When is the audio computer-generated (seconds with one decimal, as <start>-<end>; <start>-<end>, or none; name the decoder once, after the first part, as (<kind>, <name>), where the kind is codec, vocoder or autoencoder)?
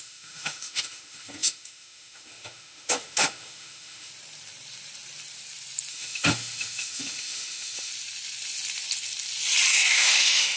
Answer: 0.0-4.1 (autoencoder, DAC-VAE); 5.9-7.9; 9.7-10.6